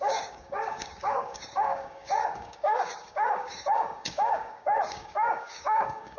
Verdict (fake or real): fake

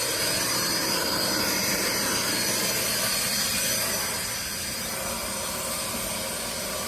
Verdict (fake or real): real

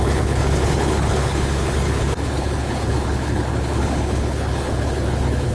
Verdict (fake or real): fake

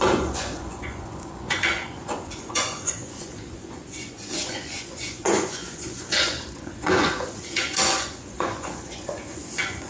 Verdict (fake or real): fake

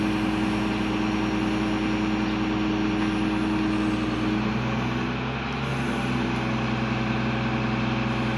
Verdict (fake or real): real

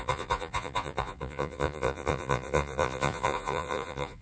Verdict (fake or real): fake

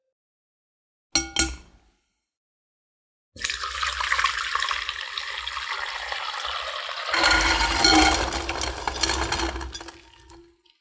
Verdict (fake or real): real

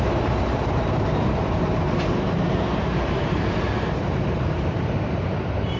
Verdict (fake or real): fake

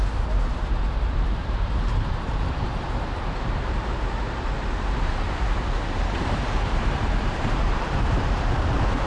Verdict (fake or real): fake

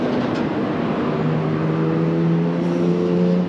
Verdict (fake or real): real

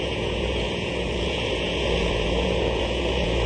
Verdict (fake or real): fake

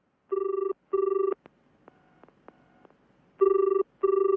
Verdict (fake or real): real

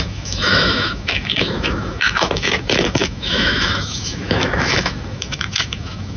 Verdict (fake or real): fake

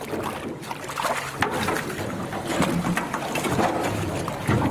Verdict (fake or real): real